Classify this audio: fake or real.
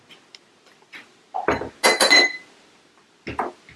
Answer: real